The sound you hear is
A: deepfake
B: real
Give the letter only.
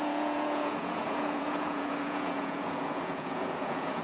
A